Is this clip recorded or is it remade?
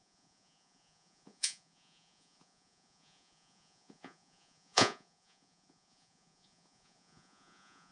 remade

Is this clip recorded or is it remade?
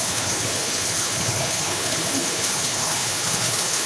remade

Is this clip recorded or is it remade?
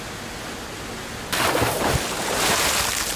recorded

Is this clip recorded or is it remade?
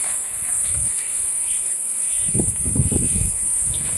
remade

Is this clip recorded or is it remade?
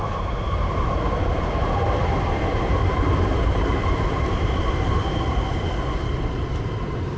remade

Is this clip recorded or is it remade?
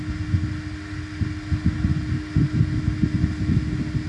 recorded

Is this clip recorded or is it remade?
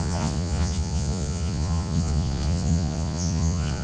remade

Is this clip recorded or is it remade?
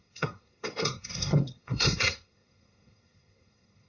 remade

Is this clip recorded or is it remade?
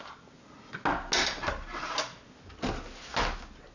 recorded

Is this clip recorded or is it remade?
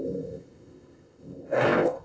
remade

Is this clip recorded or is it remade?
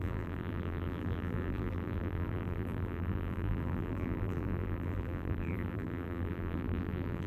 remade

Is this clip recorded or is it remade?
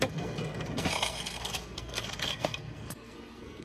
remade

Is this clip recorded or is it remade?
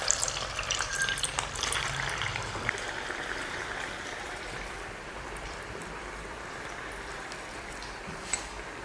remade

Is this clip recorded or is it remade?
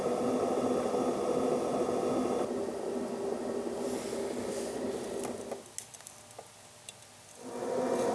recorded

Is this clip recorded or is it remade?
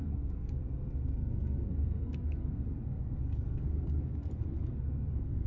remade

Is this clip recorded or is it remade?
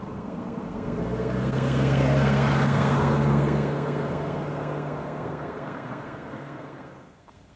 remade